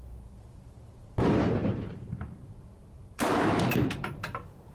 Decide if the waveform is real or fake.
fake